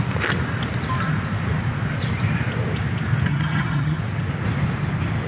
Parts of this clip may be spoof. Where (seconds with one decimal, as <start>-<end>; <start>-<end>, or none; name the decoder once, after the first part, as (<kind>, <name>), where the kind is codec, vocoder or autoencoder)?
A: 3.3-4.0 (vocoder, HiFi-GAN)

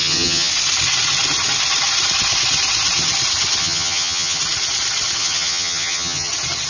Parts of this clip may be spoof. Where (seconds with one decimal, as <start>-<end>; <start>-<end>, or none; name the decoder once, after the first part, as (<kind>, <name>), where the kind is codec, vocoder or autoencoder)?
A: 0.0-0.5 (vocoder, HiFi-GAN); 3.6-4.4; 5.2-6.3

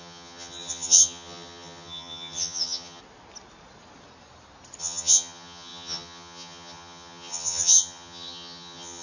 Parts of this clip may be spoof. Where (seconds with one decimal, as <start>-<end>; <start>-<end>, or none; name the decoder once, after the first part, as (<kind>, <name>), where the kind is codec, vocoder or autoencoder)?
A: 0.0-3.0 (vocoder, HiFi-GAN); 4.8-9.0

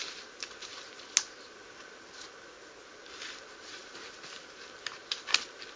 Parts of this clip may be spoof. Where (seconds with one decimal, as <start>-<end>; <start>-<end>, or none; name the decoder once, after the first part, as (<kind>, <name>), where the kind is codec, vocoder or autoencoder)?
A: none

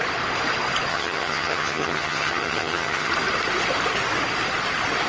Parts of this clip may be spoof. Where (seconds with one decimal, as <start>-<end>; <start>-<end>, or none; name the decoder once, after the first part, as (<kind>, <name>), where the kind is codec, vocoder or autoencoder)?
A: 0.9-3.1 (vocoder, HiFi-GAN)

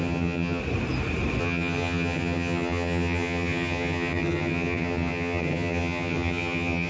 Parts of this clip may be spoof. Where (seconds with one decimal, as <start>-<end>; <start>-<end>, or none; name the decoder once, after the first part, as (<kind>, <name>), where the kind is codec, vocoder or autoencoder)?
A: 0.0-0.6 (vocoder, HiFi-GAN); 1.4-6.9

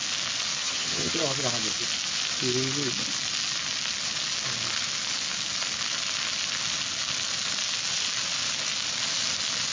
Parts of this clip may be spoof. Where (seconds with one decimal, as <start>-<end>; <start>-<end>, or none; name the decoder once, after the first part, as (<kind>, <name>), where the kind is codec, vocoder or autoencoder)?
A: 0.6-1.1 (vocoder, HiFi-GAN)

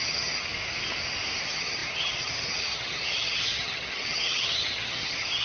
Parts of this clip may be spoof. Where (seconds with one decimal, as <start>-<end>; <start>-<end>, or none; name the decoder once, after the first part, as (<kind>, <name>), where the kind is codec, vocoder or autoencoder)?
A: 0.0-0.5 (vocoder, HiFi-GAN); 1.4-5.4